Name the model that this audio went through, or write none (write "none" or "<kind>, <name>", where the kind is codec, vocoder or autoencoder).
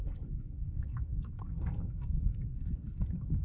codec, SNAC